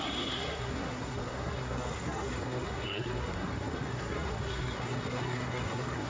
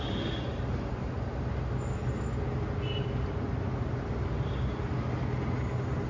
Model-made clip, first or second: first